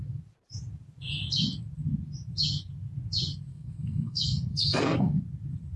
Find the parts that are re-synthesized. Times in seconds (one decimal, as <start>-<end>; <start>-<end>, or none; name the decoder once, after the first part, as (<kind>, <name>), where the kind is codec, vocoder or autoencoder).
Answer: 3.5-5.2 (codec, SNAC)